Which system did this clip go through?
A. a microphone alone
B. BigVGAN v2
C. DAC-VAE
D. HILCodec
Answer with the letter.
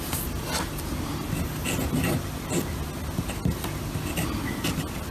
A